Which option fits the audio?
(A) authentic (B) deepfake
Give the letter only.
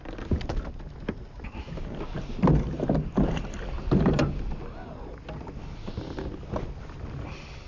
A